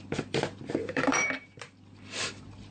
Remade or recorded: remade